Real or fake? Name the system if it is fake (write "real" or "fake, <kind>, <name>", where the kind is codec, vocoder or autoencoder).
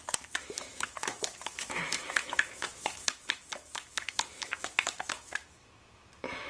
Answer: fake, autoencoder, DAC-VAE